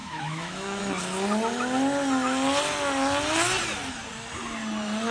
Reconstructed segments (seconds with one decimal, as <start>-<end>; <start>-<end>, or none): 0.0-0.8